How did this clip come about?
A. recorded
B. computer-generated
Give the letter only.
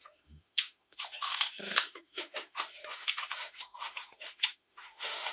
B